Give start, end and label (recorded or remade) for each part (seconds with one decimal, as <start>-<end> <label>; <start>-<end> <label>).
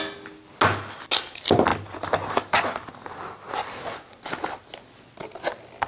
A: 0.0-1.7 recorded; 1.7-5.2 remade; 5.2-5.9 recorded